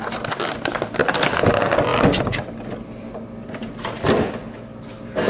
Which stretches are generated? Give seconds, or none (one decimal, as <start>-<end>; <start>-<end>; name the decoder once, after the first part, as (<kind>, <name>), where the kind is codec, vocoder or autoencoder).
none